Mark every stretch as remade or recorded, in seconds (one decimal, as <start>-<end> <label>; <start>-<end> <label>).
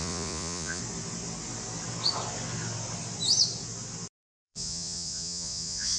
0.0-0.8 remade; 0.8-4.2 recorded; 4.2-6.0 remade